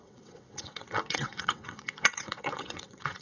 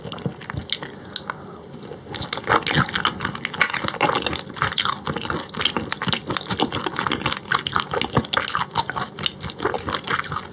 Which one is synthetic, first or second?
first